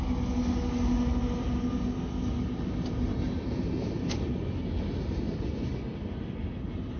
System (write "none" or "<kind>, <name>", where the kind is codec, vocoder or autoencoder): none